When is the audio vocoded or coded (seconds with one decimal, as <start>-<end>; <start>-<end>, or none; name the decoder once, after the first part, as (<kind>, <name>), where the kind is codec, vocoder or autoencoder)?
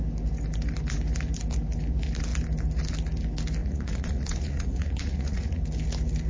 3.6-5.6 (vocoder, Vocos)